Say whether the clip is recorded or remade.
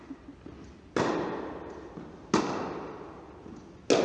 recorded